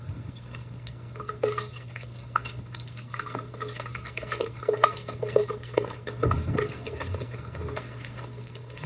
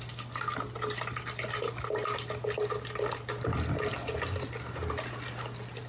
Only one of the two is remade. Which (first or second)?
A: first